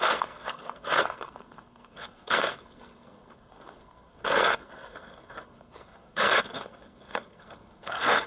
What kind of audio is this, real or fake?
fake